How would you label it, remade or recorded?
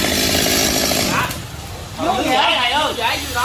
recorded